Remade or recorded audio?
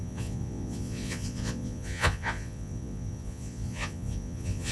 remade